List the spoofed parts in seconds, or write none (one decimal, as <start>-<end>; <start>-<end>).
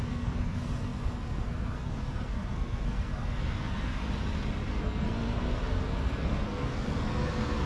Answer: 0.0-4.0; 4.7-7.7